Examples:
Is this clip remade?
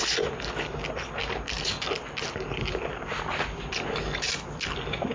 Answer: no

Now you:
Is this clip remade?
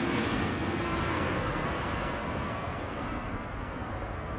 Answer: yes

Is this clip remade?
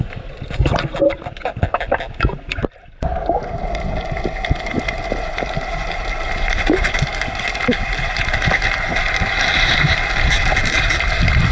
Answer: no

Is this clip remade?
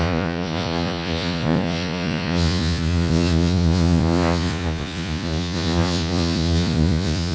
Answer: yes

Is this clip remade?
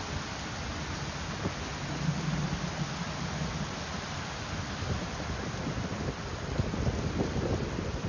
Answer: no